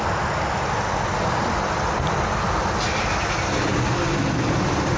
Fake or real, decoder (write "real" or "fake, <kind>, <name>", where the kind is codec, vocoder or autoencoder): real